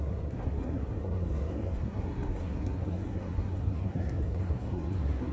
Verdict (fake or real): fake